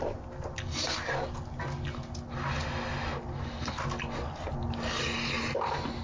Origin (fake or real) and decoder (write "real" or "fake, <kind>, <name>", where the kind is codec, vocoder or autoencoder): real